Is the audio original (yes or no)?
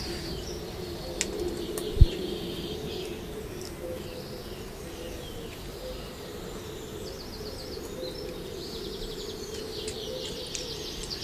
yes